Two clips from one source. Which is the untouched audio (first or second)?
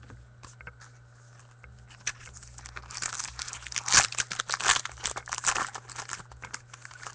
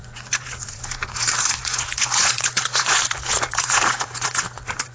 first